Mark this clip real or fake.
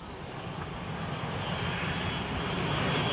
real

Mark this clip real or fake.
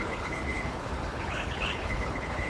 fake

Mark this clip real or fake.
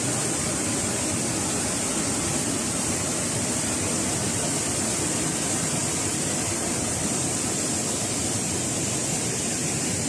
real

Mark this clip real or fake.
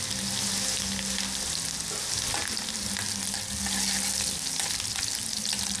real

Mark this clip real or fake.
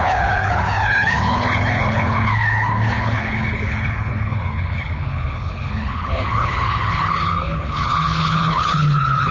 fake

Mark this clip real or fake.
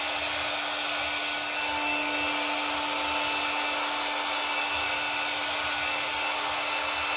real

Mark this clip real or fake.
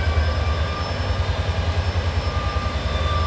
real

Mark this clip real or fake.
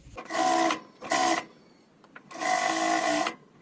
real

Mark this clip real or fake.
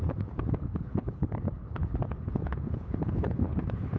fake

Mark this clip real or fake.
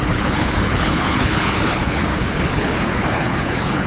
fake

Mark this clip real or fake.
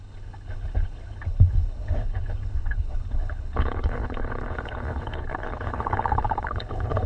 fake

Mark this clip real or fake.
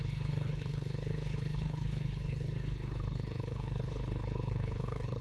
fake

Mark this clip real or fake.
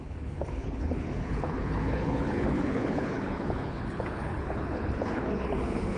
fake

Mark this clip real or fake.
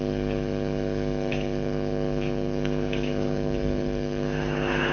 fake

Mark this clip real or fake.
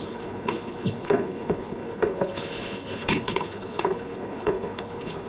fake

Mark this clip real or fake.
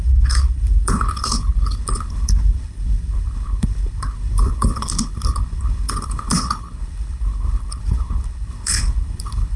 fake